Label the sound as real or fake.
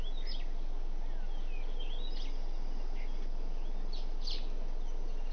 real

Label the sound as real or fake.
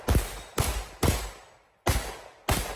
real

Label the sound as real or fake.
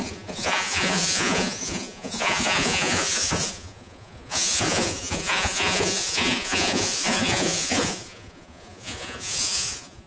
fake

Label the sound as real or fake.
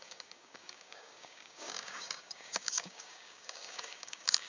fake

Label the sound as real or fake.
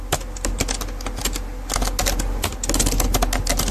real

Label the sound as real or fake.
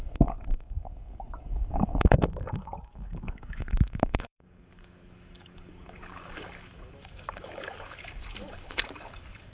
fake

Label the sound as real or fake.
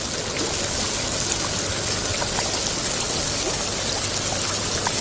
real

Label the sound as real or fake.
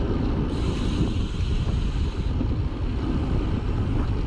fake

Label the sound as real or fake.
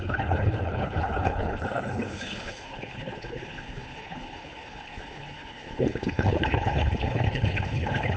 fake